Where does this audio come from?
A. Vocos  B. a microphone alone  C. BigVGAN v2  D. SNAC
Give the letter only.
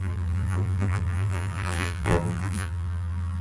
C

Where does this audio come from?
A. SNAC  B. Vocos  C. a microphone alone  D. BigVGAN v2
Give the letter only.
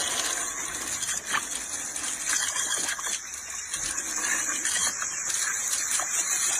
C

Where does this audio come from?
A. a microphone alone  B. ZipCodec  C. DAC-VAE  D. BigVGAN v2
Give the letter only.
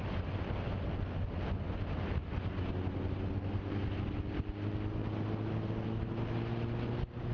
A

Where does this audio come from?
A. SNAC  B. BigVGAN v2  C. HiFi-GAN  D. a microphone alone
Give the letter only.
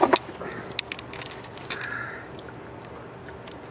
D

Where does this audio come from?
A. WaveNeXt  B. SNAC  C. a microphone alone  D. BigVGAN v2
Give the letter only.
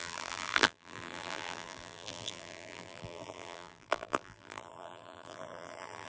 D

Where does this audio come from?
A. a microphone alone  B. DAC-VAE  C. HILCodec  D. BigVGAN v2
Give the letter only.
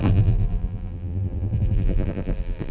D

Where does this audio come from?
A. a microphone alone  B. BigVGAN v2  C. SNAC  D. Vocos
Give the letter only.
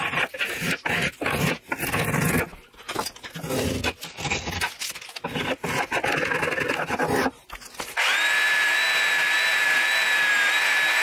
A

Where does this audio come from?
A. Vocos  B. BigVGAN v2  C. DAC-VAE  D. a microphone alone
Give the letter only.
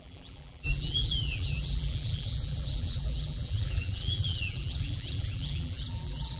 B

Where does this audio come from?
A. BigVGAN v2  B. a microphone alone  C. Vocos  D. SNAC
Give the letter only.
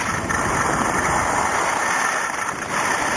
A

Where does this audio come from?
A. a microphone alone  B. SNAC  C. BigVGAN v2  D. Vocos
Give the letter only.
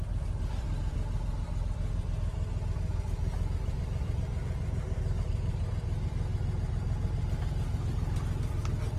A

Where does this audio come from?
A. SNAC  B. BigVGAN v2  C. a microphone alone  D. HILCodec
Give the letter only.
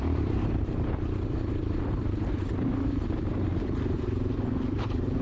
B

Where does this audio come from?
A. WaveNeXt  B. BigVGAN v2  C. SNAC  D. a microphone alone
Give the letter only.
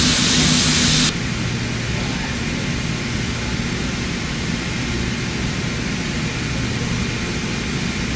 D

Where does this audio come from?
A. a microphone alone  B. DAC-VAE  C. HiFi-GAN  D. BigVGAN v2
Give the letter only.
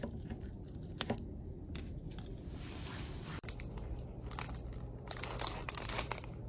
D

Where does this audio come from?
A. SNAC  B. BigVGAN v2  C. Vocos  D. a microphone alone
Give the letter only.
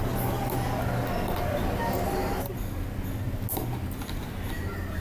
D